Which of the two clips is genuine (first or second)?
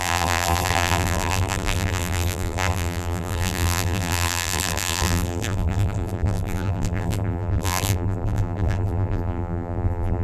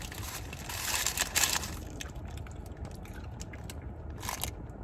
second